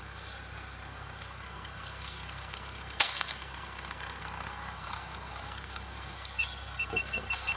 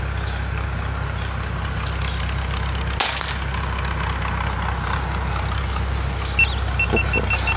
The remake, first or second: first